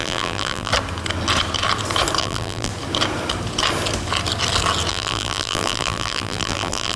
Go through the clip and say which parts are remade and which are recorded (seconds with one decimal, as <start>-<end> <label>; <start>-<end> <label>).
0.0-0.7 remade; 0.7-2.2 recorded; 2.2-2.7 remade; 2.7-4.9 recorded; 4.9-7.0 remade